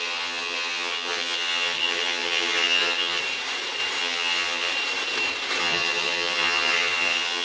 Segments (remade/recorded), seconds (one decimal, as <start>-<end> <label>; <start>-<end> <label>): 0.0-3.2 remade; 3.2-4.0 recorded; 4.0-4.7 remade; 4.7-5.6 recorded; 5.6-7.4 remade